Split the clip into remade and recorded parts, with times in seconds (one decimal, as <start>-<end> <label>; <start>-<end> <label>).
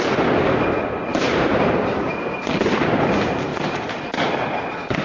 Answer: 0.0-1.1 recorded; 1.1-2.7 remade; 2.7-3.5 recorded; 3.5-4.0 remade; 4.0-5.0 recorded